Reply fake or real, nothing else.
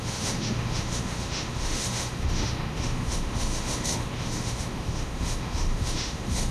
fake